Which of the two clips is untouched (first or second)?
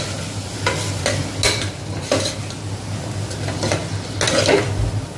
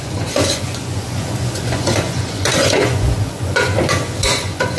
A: first